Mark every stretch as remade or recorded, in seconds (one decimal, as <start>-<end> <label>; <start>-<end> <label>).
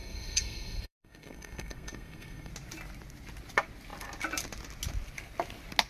0.0-2.5 remade; 2.5-5.9 recorded